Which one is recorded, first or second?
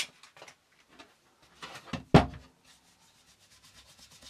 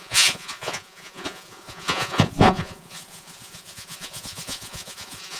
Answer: first